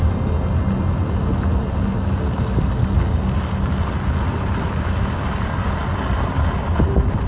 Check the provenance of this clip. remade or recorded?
recorded